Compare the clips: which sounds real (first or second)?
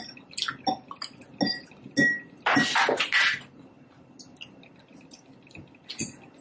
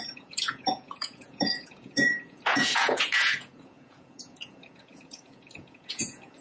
first